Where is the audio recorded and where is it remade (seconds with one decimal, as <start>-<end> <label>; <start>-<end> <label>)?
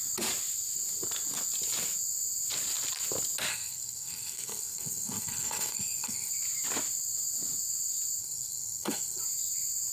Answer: 0.0-3.5 recorded; 3.5-6.3 remade; 6.3-8.2 recorded; 8.2-9.2 remade; 9.2-9.9 recorded